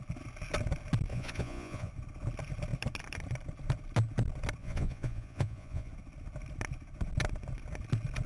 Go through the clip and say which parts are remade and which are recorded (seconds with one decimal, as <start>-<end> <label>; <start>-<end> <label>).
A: 0.0-1.1 recorded; 1.1-1.9 remade; 1.9-4.6 recorded; 4.6-5.9 remade; 5.9-8.3 recorded